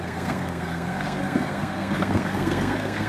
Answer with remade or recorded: remade